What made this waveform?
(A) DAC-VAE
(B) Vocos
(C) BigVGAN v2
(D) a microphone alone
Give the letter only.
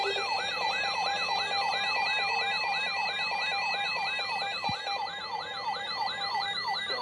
C